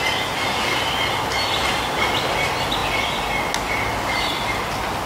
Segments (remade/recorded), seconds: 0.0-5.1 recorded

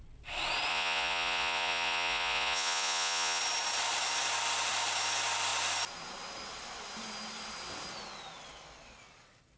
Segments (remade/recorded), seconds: 0.0-0.7 recorded; 0.7-3.4 remade; 3.4-9.6 recorded